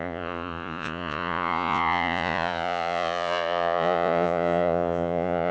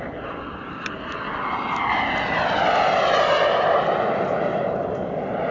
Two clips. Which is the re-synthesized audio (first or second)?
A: first